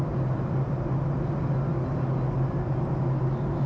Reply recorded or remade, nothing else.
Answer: recorded